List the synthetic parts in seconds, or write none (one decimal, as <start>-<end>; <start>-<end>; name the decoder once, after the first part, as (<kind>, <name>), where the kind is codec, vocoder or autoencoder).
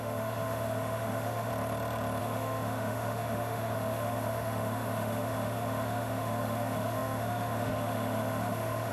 0.0-1.5 (autoencoder, DAC-VAE); 2.2-8.9